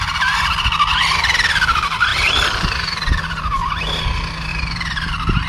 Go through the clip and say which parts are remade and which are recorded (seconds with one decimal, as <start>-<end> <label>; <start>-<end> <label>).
0.0-2.1 recorded; 2.1-3.8 remade; 3.8-4.5 recorded; 4.5-5.1 remade; 5.1-5.5 recorded